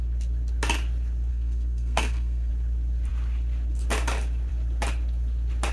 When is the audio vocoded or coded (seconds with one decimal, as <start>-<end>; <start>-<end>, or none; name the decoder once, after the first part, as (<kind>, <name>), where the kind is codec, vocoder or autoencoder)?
1.3-2.5 (codec, SNAC)